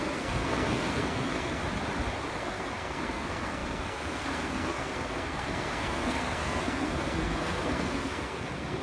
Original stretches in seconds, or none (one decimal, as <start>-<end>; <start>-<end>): 1.6-2.3